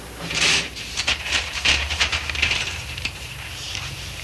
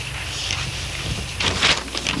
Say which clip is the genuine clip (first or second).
second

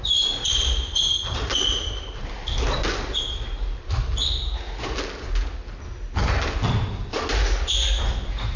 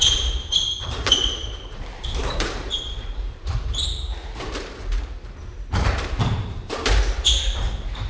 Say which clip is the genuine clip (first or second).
first